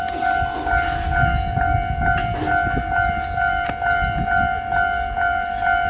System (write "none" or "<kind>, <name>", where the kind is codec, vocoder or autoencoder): none